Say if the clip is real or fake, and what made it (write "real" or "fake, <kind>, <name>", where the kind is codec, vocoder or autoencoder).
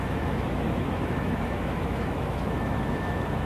fake, autoencoder, DAC-VAE